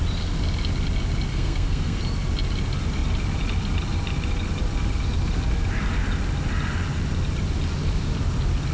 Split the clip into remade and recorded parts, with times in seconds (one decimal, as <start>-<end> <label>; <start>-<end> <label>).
0.0-1.3 recorded; 1.3-2.0 remade; 2.0-8.7 recorded